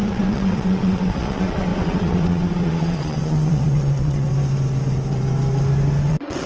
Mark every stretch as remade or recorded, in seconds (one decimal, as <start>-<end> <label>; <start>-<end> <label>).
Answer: 0.0-4.3 remade; 4.3-6.1 recorded; 6.1-6.5 remade